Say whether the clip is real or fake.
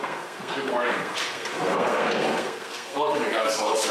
fake